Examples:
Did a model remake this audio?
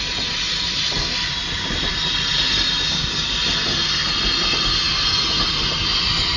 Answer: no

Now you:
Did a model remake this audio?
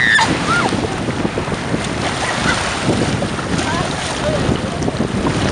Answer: no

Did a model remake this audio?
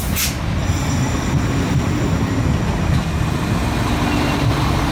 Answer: no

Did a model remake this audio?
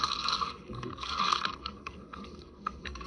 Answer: yes